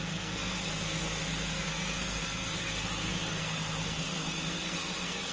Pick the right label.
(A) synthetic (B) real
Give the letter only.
A